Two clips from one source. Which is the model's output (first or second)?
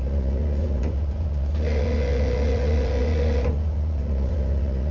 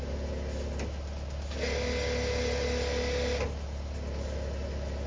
first